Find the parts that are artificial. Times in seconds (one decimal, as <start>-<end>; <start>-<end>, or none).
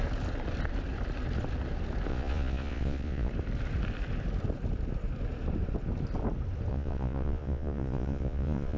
2.1-3.3; 6.7-8.8